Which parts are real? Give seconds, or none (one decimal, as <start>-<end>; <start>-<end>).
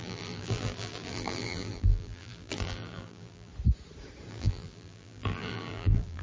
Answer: 3.5-4.3